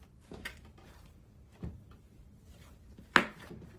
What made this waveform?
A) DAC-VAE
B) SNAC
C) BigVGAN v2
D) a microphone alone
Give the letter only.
C